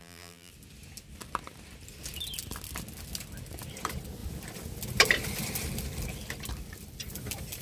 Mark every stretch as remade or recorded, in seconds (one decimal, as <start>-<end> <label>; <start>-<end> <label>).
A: 0.0-0.5 remade; 0.5-7.6 recorded